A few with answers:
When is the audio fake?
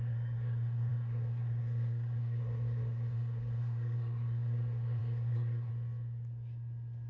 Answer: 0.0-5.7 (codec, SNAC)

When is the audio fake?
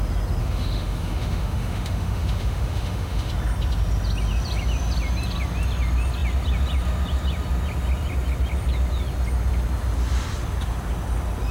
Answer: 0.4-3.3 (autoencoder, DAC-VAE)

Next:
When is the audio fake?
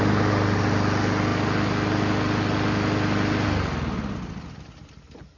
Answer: none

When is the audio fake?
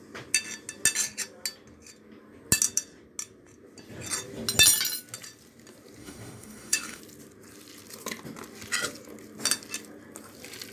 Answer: 6.0-7.0 (autoencoder, DAC-VAE)